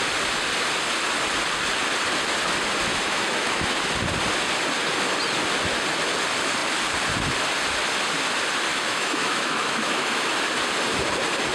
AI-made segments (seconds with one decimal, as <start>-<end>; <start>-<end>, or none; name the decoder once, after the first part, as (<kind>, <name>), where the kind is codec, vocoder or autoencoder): 2.9-3.7 (autoencoder, DAC-VAE); 8.7-10.3